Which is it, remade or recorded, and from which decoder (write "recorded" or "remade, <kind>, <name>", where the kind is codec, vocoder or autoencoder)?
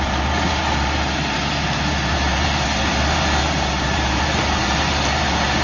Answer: remade, vocoder, BigVGAN v2